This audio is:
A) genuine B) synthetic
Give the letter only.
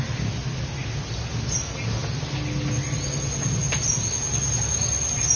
A